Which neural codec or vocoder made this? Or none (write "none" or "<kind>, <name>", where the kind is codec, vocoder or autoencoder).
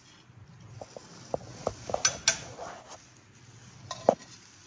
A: none